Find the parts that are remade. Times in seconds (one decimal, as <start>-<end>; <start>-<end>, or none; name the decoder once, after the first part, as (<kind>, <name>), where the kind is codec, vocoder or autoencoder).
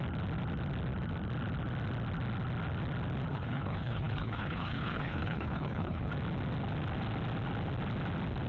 3.3-6.1 (codec, HILCodec)